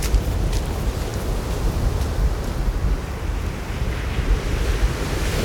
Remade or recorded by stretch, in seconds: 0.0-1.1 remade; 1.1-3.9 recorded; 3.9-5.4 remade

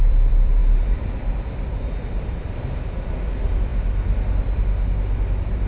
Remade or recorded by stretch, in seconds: 0.0-0.6 remade; 0.6-2.6 recorded; 2.6-3.7 remade; 3.7-4.4 recorded; 4.4-5.7 remade

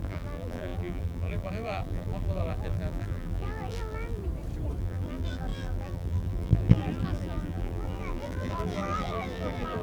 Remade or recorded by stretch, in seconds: 0.0-4.2 remade; 4.2-4.8 recorded; 4.8-9.8 remade

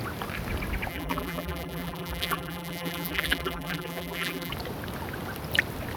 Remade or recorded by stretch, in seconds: 0.0-0.9 recorded; 0.9-4.5 remade; 4.5-6.0 recorded

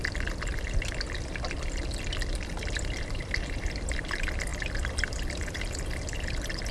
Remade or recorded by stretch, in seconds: 0.0-2.5 recorded; 2.5-6.7 remade

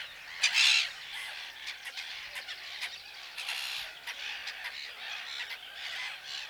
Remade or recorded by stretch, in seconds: 0.0-0.7 recorded; 0.7-4.0 remade; 4.0-6.5 recorded

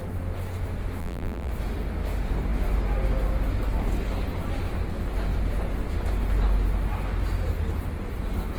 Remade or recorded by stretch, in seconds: 0.0-1.0 recorded; 1.0-1.5 remade; 1.5-8.6 recorded